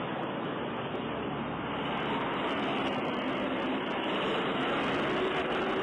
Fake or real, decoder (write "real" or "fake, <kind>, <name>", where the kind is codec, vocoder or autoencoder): real